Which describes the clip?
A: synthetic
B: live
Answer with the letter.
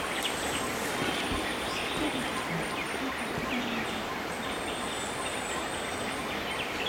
B